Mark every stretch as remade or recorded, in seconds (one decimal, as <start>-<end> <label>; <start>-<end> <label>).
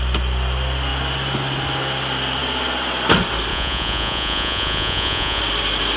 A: 0.0-3.5 recorded; 3.5-5.4 remade; 5.4-6.0 recorded